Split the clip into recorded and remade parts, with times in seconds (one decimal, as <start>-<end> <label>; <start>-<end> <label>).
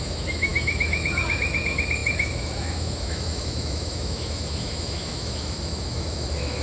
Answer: 0.0-6.6 remade